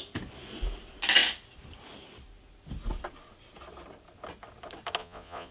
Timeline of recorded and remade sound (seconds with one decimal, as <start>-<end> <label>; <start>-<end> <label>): 0.0-5.0 recorded; 5.0-5.5 remade